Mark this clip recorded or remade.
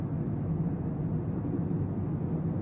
recorded